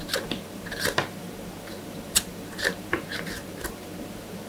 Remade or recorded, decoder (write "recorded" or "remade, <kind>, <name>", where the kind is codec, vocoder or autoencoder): remade, vocoder, BigVGAN v2